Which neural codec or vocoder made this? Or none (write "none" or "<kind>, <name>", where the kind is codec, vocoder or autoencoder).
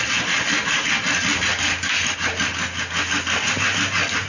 none